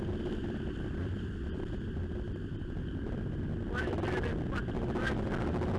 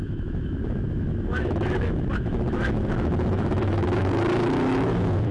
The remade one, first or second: second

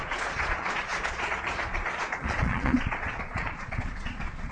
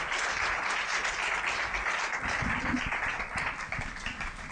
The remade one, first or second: first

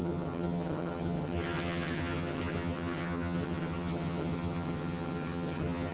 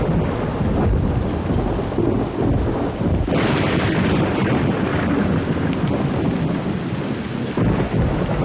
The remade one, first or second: first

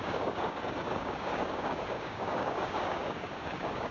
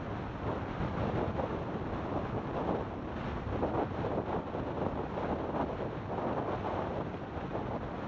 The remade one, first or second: first